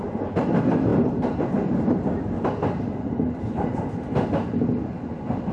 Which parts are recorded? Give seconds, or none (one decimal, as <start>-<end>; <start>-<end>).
0.0-5.5